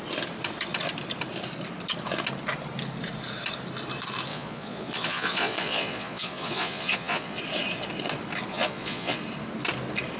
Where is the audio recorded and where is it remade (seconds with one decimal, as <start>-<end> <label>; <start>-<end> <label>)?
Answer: 0.0-4.3 recorded; 4.3-7.4 remade; 7.4-8.5 recorded; 8.5-9.2 remade; 9.2-10.2 recorded